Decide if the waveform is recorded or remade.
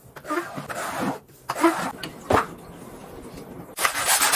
recorded